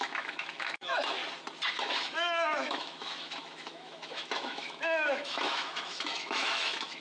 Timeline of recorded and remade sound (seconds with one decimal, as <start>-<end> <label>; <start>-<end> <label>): 0.0-1.2 remade; 1.2-1.7 recorded; 1.7-7.0 remade